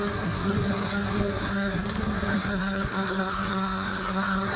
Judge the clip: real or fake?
fake